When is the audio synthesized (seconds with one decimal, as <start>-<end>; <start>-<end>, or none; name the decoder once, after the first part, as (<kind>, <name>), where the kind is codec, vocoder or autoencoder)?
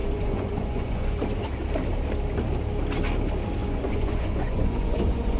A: 0.0-1.2 (vocoder, Vocos); 3.6-5.4